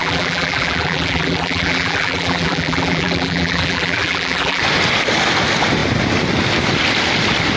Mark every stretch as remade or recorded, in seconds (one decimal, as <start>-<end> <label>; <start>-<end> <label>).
0.0-4.6 remade; 4.6-7.6 recorded